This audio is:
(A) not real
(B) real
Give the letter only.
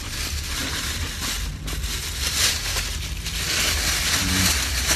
B